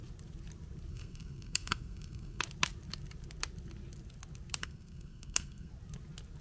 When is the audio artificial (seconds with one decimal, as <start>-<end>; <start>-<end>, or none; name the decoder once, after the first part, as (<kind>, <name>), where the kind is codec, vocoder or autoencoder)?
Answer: 0.9-2.4 (codec, SNAC); 4.6-5.7